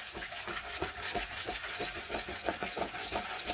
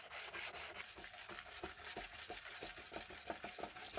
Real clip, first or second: second